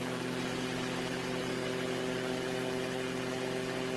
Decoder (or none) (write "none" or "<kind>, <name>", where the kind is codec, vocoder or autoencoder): none